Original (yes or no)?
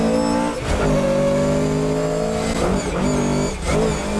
yes